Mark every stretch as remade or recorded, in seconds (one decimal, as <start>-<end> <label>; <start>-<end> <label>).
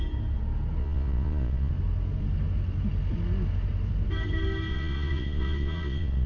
0.0-0.8 recorded; 0.8-1.7 remade; 1.7-4.7 recorded; 4.7-6.3 remade